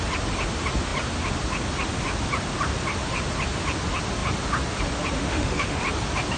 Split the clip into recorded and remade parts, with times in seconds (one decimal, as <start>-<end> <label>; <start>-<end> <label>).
0.0-5.2 recorded; 5.2-5.8 remade; 5.8-6.4 recorded